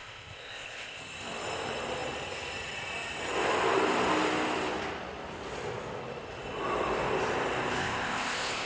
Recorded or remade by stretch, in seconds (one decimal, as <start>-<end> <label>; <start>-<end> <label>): 0.0-1.0 remade; 1.0-7.8 recorded; 7.8-8.7 remade